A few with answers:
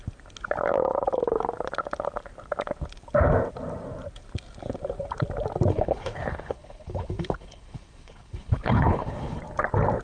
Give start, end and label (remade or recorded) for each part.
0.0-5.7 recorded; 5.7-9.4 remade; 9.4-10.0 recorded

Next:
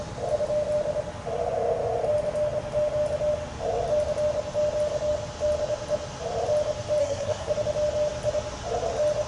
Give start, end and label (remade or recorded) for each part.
0.0-7.0 recorded; 7.0-7.5 remade; 7.5-9.3 recorded

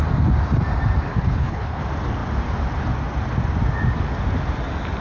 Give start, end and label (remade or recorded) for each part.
0.0-1.1 recorded; 1.1-1.8 remade; 1.8-5.0 recorded

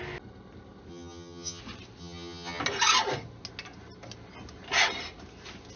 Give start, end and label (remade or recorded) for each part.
0.0-0.9 recorded; 0.9-1.6 remade; 1.6-2.0 recorded; 2.0-2.6 remade; 2.6-5.8 recorded

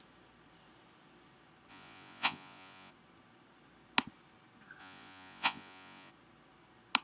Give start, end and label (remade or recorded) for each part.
0.0-1.7 recorded; 1.7-2.9 remade; 2.9-4.8 recorded; 4.8-6.1 remade; 6.1-7.0 recorded